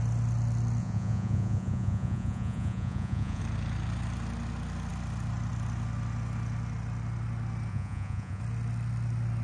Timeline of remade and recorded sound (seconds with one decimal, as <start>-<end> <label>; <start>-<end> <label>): 0.0-0.8 recorded; 0.8-3.4 remade; 3.4-7.7 recorded; 7.7-8.4 remade; 8.4-9.4 recorded